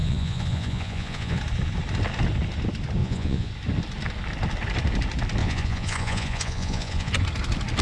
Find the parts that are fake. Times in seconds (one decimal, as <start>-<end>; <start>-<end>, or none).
0.0-1.4; 3.0-3.5; 5.4-7.1